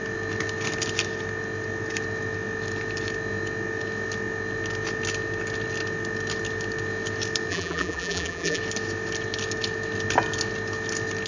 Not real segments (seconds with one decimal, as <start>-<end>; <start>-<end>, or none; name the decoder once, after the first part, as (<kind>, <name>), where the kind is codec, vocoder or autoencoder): 7.5-8.6 (vocoder, BigVGAN v2)